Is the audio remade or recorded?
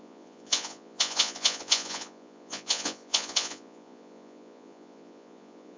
remade